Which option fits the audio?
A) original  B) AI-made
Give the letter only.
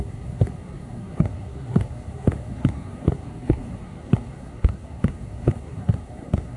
B